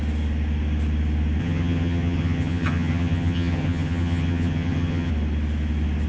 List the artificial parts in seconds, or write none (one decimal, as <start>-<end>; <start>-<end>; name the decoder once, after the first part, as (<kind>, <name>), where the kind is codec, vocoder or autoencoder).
1.4-5.1 (vocoder, HiFi-GAN)